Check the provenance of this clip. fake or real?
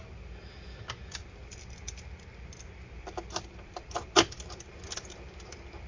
real